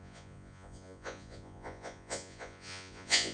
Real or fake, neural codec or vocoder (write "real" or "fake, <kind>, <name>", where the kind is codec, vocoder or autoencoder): fake, vocoder, Vocos